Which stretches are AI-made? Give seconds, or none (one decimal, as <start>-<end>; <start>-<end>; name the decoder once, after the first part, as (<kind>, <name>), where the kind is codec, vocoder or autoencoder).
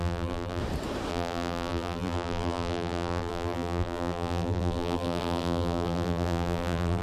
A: 0.0-0.6 (vocoder, BigVGAN v2); 1.1-7.0